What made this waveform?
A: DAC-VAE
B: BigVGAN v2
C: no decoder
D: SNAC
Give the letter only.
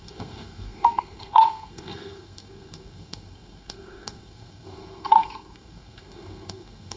D